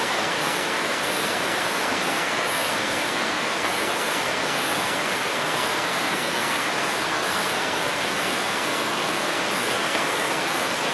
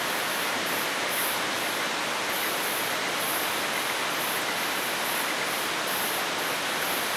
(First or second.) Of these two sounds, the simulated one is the first